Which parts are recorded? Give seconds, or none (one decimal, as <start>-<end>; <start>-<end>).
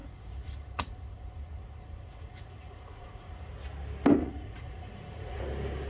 3.5-4.2; 5.4-5.9